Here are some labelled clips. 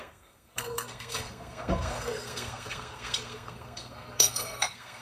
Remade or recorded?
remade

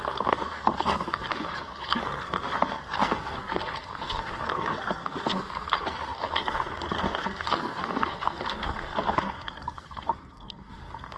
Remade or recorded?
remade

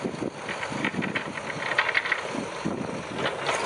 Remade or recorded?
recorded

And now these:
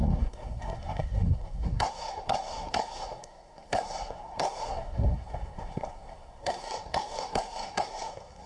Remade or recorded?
remade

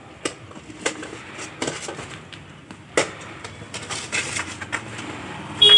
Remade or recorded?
recorded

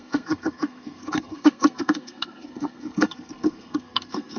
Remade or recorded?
remade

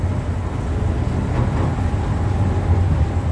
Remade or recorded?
recorded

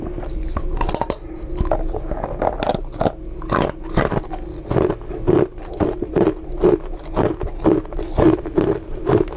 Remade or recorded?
recorded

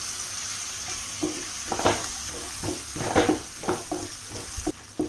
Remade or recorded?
recorded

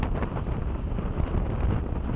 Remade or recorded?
recorded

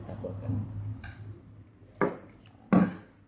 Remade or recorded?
recorded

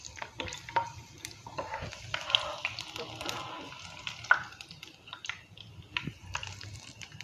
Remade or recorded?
recorded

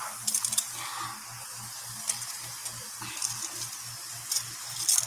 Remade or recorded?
recorded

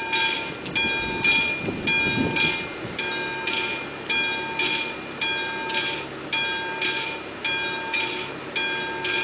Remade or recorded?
recorded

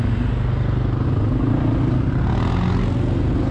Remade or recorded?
recorded